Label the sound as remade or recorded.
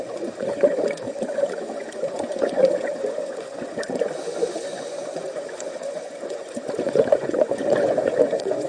remade